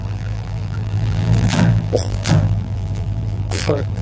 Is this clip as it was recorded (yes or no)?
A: no